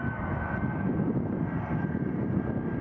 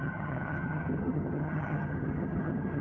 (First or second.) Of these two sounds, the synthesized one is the second